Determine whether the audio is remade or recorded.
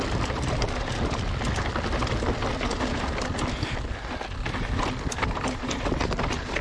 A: recorded